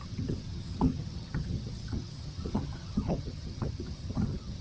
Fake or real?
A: fake